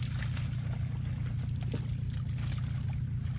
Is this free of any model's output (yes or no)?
yes